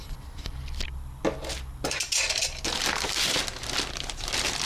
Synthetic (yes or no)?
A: no